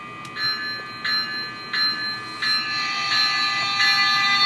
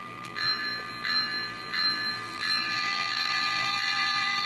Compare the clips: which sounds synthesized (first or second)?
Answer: second